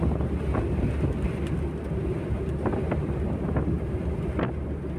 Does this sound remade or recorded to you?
recorded